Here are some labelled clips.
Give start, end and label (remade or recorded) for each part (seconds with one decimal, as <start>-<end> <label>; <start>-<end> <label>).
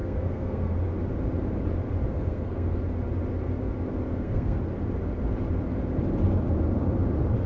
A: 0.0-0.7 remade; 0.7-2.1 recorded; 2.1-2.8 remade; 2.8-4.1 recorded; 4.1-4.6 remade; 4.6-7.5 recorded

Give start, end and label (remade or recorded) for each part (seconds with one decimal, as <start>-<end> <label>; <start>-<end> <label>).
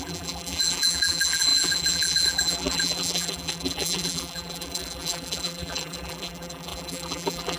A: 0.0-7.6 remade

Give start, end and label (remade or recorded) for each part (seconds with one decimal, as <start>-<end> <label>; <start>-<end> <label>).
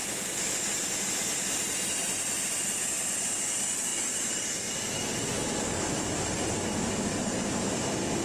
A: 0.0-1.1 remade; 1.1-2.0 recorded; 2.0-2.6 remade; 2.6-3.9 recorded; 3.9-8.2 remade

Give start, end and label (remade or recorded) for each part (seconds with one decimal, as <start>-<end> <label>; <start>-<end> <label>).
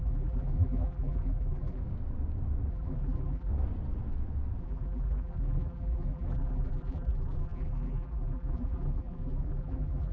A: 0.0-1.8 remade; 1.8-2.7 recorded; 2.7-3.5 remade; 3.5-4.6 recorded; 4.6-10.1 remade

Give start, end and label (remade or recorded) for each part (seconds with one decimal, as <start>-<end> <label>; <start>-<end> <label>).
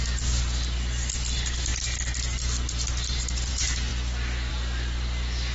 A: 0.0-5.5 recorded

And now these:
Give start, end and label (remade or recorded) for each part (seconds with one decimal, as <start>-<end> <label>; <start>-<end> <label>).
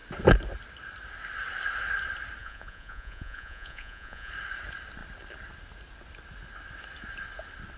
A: 0.0-2.4 recorded; 2.4-4.3 remade; 4.3-7.8 recorded